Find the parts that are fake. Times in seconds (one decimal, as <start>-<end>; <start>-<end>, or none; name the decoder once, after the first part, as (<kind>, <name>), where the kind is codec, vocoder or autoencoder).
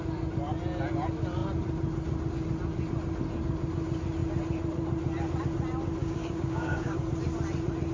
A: 6.0-7.0 (codec, DAC)